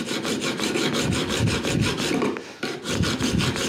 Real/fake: fake